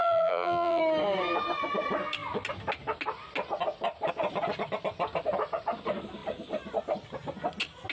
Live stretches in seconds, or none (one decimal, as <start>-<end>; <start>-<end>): 0.8-7.9